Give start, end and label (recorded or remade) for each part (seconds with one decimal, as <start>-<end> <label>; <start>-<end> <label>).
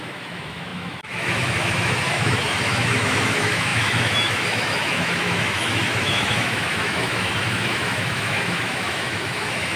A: 0.0-9.8 remade